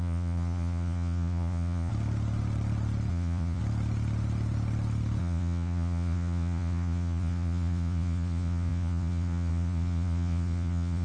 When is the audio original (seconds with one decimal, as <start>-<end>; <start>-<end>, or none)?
1.9-3.1; 3.6-5.2